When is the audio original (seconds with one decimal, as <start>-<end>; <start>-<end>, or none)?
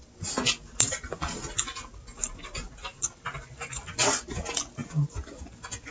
0.0-2.9; 4.2-5.9